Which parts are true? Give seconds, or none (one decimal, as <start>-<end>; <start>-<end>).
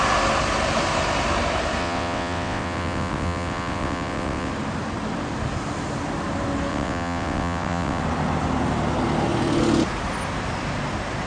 0.0-1.8; 4.5-6.7; 8.0-11.3